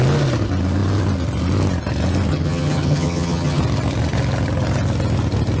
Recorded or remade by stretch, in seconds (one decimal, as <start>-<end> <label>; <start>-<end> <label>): 0.0-2.3 recorded; 2.3-3.6 remade; 3.6-5.6 recorded